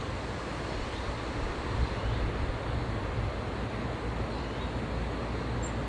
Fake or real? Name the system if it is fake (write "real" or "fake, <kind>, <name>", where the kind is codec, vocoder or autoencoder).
real